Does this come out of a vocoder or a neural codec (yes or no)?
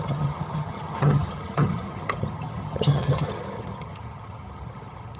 yes